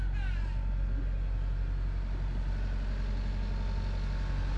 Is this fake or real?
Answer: real